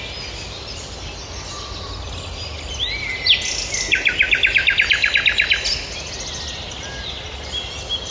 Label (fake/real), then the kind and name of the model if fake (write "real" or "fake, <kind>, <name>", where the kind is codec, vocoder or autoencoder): real